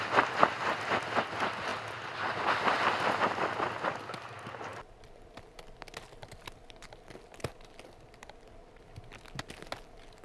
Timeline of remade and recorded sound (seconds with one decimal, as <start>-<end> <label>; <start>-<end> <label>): 0.0-10.2 recorded